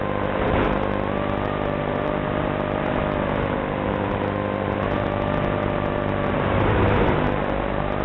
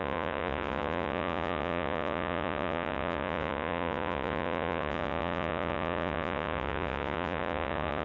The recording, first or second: first